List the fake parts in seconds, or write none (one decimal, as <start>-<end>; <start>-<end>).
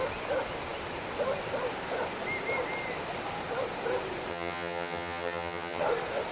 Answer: 4.3-5.8